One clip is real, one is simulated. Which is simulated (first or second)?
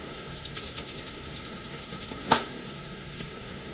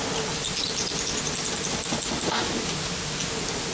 first